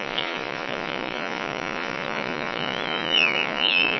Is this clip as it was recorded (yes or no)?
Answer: no